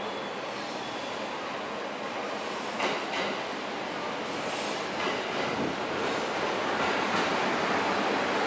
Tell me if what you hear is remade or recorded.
recorded